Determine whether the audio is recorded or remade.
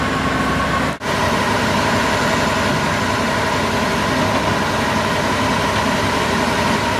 recorded